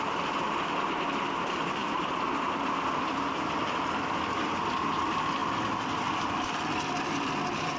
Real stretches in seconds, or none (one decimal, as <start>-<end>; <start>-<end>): 0.0-1.8; 2.6-5.4